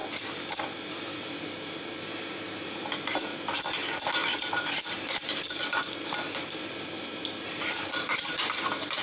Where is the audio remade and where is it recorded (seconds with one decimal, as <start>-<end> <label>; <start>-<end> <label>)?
0.0-0.6 recorded; 0.6-3.3 remade; 3.3-3.8 recorded; 3.8-9.0 remade